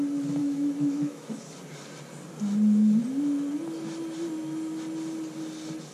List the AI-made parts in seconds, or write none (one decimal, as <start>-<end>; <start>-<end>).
0.4-1.4